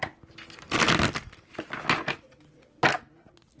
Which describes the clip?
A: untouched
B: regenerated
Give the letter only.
A